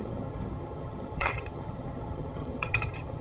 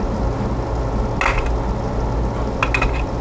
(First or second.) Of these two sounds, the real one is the second